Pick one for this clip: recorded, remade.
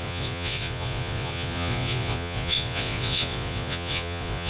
remade